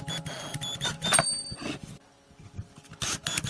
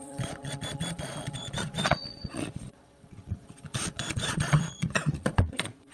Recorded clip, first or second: first